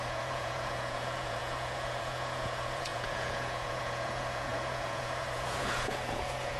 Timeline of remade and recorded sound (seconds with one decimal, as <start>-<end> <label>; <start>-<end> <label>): 0.0-6.6 remade